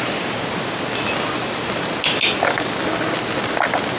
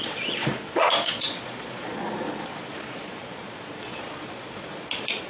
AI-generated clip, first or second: second